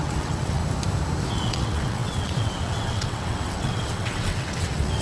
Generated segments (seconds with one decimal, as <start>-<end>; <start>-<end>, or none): 0.0-0.6; 1.3-5.0

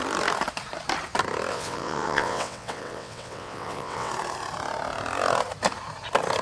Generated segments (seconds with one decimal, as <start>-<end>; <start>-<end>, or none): 1.5-4.1

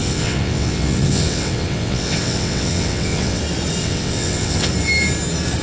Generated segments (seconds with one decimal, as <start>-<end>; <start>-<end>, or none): 0.0-3.4; 3.8-4.7

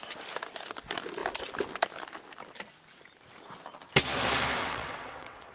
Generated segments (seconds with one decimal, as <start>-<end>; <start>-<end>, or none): 4.6-5.5

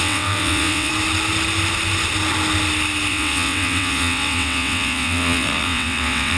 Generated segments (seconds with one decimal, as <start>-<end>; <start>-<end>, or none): 0.0-0.9; 3.1-6.4